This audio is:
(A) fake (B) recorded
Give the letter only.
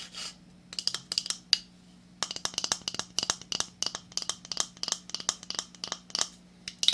B